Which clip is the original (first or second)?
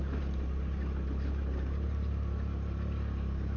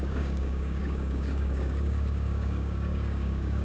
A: first